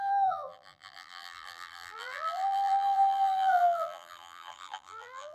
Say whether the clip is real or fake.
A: fake